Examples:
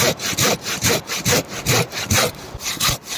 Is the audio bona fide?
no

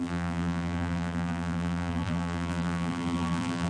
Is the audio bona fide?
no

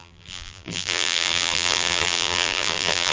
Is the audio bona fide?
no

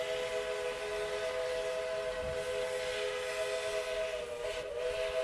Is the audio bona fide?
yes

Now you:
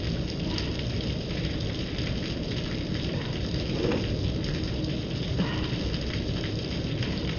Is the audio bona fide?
no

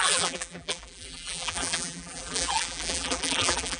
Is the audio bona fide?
no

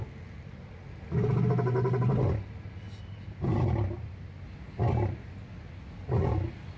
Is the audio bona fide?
yes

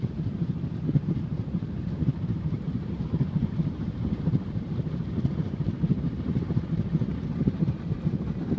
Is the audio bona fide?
no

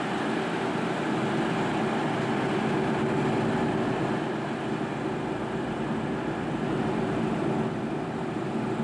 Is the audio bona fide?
yes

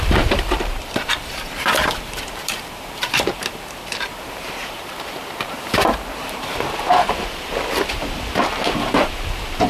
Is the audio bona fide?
no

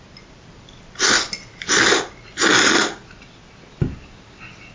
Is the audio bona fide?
yes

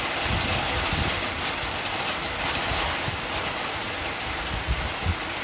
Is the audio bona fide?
yes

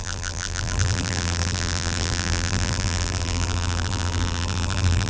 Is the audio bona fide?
no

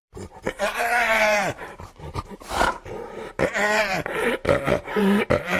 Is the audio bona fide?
no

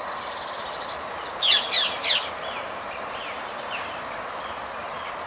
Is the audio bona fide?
no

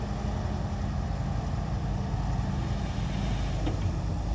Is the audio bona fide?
yes